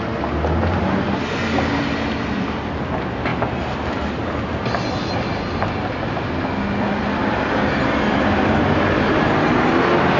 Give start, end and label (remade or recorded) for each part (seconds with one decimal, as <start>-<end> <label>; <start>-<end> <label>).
0.0-10.2 recorded